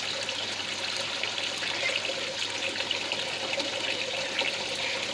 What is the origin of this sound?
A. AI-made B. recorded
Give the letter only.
B